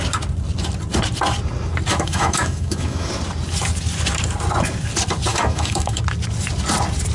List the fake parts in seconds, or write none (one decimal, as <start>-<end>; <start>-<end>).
1.9-3.1; 5.3-6.0